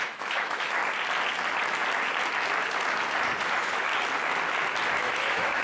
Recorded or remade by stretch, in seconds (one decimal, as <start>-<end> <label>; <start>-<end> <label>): 0.0-0.8 remade; 0.8-3.5 recorded; 3.5-3.9 remade; 3.9-5.0 recorded; 5.0-5.6 remade